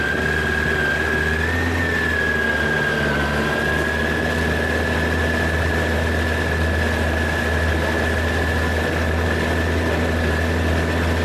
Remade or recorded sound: recorded